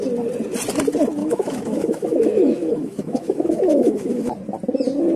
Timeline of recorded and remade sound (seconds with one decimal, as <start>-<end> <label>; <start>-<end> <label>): 0.0-1.2 recorded; 1.2-4.3 remade; 4.3-5.2 recorded